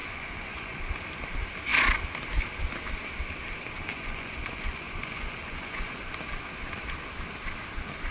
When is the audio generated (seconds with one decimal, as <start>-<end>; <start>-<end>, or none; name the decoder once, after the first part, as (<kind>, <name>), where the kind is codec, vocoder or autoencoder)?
0.0-0.8 (vocoder, Vocos); 3.9-6.0